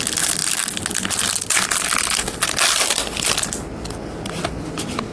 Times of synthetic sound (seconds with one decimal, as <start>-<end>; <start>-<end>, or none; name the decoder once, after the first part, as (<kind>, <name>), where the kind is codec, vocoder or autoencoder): none